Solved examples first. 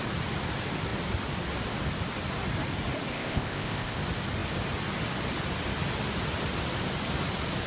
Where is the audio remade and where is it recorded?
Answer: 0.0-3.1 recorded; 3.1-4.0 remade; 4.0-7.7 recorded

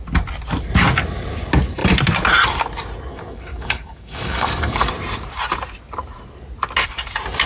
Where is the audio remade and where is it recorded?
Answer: 0.0-3.1 recorded; 3.1-4.9 remade; 4.9-7.5 recorded

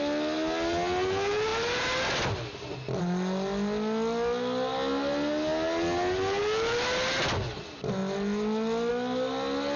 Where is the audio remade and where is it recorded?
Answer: 0.0-9.8 recorded

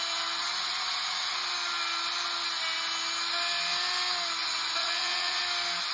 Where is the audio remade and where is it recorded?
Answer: 0.0-0.5 recorded; 0.5-1.3 remade; 1.3-4.4 recorded; 4.4-5.4 remade; 5.4-5.9 recorded

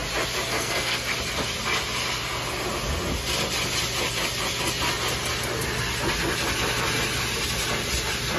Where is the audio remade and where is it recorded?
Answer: 0.0-0.5 recorded; 0.5-1.1 remade; 1.1-8.4 recorded

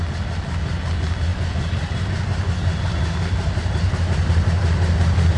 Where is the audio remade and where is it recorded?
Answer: 0.0-1.3 recorded; 1.3-4.5 remade; 4.5-5.4 recorded